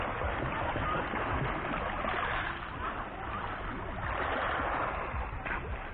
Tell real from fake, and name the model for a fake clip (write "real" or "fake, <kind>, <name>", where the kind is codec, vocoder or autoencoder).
real